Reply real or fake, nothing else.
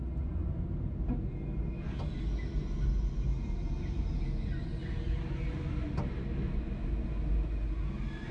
real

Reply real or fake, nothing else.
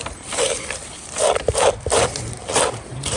fake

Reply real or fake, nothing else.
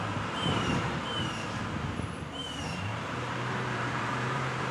fake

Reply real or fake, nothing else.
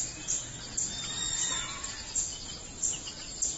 real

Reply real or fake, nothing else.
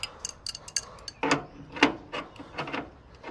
real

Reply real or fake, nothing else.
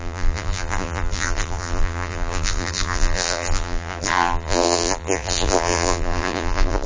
fake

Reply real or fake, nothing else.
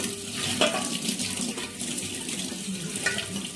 real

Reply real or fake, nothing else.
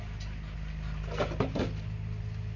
real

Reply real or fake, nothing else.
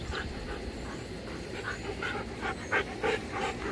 fake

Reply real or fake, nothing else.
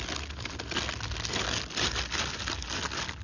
real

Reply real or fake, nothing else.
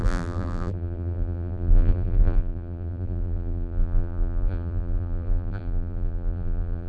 fake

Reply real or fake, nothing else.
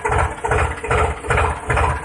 real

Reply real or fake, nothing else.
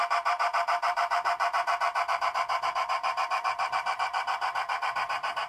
fake